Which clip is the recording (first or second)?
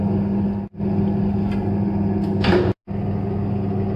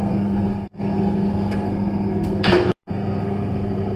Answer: first